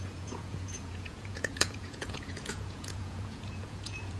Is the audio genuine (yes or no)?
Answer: no